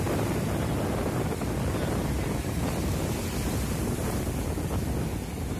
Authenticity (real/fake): real